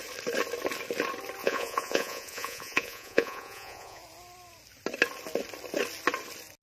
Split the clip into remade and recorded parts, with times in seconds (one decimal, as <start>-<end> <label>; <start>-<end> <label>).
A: 0.0-1.4 recorded; 1.4-4.0 remade; 4.0-6.6 recorded